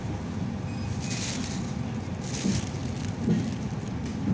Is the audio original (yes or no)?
yes